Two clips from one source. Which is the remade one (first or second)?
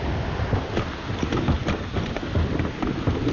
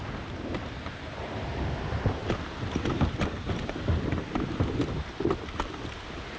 second